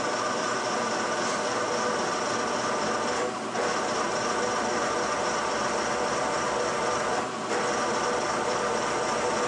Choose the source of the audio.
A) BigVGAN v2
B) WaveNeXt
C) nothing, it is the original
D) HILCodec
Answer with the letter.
C